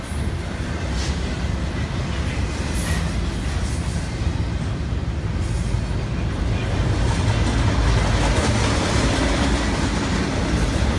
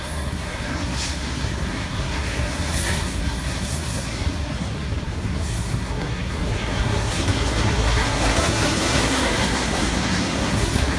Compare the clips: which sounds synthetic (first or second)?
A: second